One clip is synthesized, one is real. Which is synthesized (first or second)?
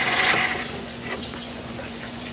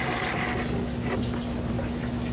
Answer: first